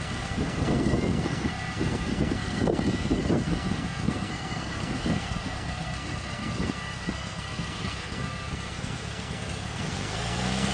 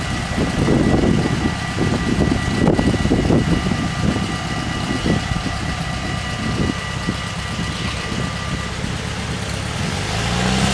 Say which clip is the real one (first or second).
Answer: second